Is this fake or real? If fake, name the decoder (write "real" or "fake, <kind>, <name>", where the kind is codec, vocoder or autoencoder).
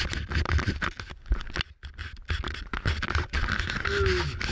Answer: real